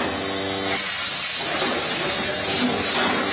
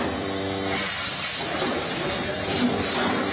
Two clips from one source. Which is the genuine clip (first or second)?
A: first